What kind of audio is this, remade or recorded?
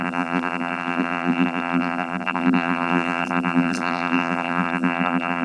remade